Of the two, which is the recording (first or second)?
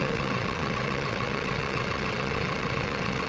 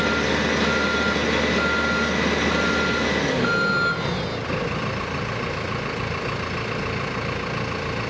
second